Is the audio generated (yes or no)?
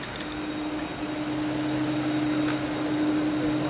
no